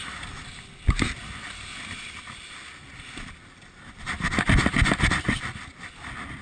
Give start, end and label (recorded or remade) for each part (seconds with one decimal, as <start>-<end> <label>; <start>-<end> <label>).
0.0-6.4 recorded